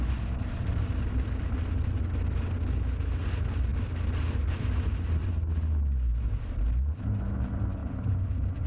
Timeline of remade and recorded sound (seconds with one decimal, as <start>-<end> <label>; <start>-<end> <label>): 0.0-3.7 recorded; 3.7-5.3 remade; 5.3-6.1 recorded; 6.1-6.7 remade; 6.7-7.8 recorded; 7.8-8.7 remade